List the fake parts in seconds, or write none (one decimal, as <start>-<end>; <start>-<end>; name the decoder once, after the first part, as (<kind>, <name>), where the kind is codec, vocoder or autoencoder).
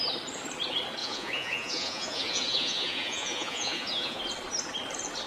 1.0-4.2 (vocoder, Vocos)